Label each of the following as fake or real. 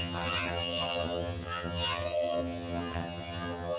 fake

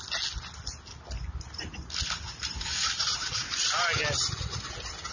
real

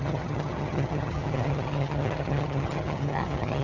fake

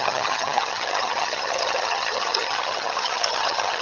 fake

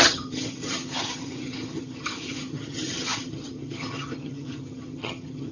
fake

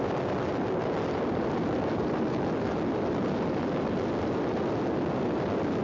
real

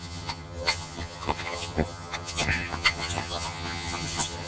fake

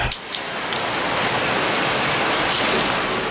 real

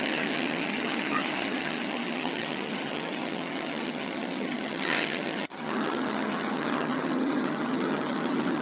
fake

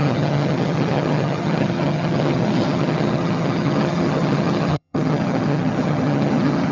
fake